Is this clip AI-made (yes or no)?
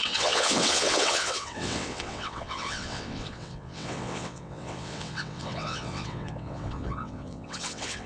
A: yes